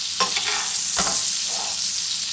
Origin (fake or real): real